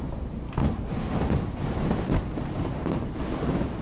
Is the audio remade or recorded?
recorded